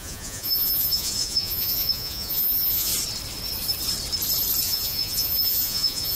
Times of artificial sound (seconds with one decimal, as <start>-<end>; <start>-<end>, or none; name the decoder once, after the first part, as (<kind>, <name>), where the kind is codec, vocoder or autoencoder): 0.0-2.9 (vocoder, Vocos); 4.6-6.2